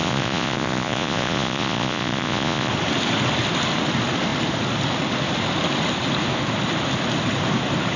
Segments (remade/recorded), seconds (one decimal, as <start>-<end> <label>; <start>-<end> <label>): 0.0-2.7 remade; 2.7-8.0 recorded